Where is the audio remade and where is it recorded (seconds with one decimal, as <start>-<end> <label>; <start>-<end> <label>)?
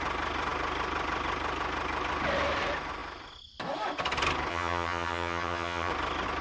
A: 0.0-4.5 recorded; 4.5-5.9 remade; 5.9-6.4 recorded